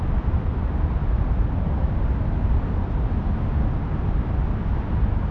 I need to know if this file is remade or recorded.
recorded